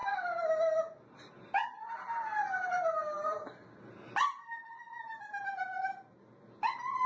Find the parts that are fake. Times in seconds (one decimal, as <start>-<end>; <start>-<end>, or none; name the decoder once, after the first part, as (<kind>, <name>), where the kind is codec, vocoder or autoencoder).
none